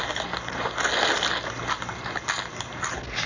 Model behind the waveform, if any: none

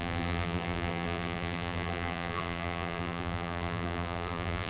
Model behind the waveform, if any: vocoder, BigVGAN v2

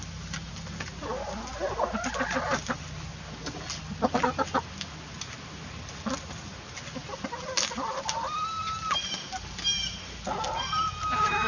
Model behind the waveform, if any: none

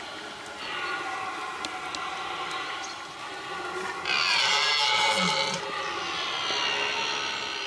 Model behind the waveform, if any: none